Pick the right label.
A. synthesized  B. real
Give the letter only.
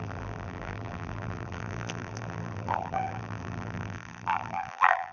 A